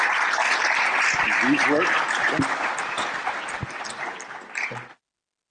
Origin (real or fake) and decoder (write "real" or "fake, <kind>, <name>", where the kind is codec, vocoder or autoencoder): real